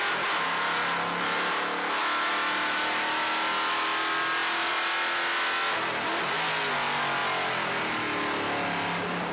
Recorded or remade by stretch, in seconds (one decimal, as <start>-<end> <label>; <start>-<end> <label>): 0.0-9.3 recorded